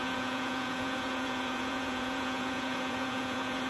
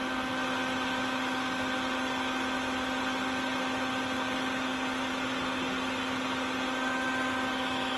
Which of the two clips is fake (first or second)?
first